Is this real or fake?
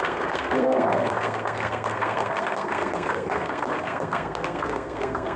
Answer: fake